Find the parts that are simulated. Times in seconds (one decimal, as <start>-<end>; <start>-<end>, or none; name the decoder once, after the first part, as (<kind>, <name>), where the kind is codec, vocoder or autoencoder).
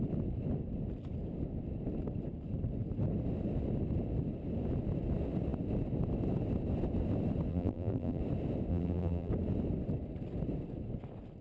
7.5-8.2 (vocoder, BigVGAN v2); 8.7-9.3